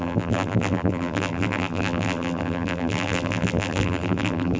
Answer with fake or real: fake